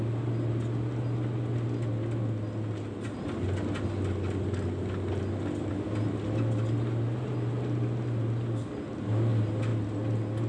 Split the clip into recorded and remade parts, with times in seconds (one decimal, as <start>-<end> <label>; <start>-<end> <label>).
0.0-10.5 recorded